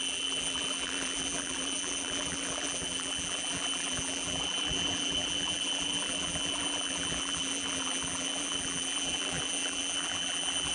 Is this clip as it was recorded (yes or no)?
no